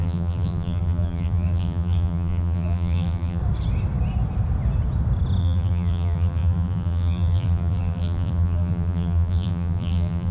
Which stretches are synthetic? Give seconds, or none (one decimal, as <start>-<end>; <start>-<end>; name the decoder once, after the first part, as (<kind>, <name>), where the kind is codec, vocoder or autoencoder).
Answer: 0.0-3.4 (vocoder, BigVGAN v2); 5.4-10.3